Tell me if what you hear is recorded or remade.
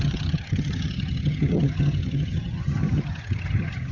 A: remade